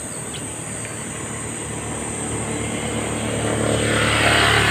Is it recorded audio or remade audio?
recorded